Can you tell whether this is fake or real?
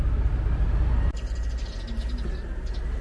real